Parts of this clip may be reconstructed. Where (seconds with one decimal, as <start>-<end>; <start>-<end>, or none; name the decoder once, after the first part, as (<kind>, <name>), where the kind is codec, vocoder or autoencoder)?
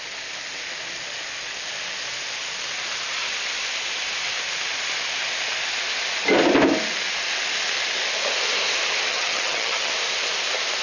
9.1-9.9 (vocoder, HiFi-GAN)